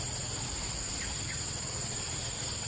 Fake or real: real